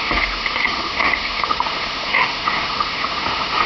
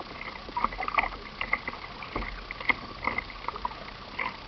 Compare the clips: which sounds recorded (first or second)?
second